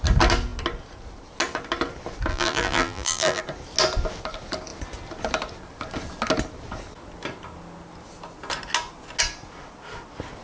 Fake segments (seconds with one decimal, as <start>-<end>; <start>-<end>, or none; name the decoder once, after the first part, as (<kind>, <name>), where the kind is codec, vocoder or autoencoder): 2.3-3.4 (vocoder, BigVGAN v2)

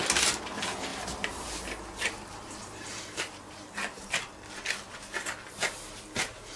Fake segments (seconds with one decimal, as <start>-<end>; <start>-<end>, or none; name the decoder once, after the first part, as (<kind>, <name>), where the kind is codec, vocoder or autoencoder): 0.9-4.1 (vocoder, BigVGAN v2)

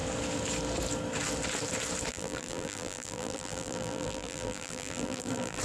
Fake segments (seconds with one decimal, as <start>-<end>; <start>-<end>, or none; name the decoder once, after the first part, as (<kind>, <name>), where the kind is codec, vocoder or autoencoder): 2.1-5.6 (vocoder, BigVGAN v2)

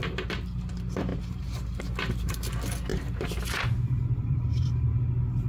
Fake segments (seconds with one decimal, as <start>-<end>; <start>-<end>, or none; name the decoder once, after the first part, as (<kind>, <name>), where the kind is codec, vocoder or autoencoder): 1.1-1.8 (vocoder, BigVGAN v2); 2.9-5.0